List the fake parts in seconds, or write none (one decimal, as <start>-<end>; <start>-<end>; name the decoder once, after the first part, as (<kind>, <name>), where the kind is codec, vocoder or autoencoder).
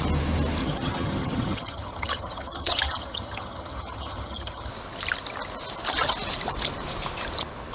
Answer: 0.6-4.7 (vocoder, HiFi-GAN)